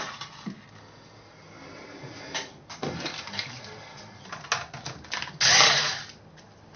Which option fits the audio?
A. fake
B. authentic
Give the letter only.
B